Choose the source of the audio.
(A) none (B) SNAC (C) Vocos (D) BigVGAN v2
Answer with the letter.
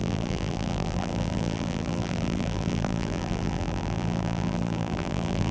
D